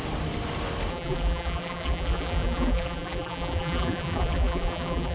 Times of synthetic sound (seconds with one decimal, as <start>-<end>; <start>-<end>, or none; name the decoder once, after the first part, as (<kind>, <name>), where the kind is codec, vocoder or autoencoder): 0.9-5.1 (vocoder, BigVGAN v2)